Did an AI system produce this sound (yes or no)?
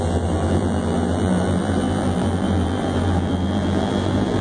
yes